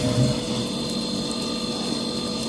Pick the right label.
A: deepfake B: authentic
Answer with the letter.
B